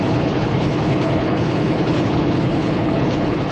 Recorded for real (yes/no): no